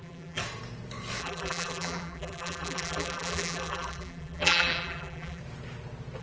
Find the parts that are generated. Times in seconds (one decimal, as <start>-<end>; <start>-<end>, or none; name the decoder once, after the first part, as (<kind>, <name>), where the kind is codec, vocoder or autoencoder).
0.0-0.4 (vocoder, BigVGAN v2); 1.2-5.4